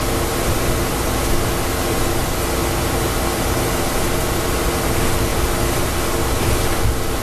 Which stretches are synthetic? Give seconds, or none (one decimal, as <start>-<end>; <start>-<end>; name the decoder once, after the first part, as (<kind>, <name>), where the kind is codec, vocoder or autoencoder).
none